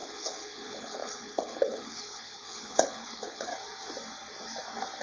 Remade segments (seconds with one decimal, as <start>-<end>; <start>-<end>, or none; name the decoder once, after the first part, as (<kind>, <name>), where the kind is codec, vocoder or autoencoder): 0.0-3.5 (codec, HILCodec)